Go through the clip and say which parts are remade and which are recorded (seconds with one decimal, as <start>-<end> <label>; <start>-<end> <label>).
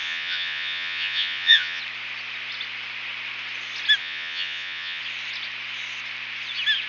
0.0-1.8 remade; 1.8-4.0 recorded; 4.0-5.0 remade; 5.0-6.9 recorded